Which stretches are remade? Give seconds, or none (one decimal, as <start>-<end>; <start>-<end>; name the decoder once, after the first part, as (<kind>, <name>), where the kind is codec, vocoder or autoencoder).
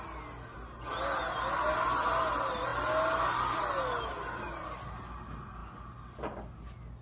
none